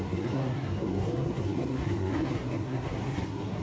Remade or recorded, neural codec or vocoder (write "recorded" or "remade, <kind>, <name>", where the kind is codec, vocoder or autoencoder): remade, codec, SNAC